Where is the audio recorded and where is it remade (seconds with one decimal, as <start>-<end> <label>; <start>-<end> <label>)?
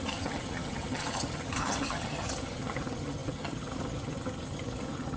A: 0.0-5.2 remade